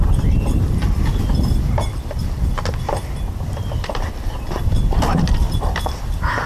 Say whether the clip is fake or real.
fake